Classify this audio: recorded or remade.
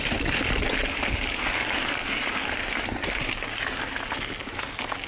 recorded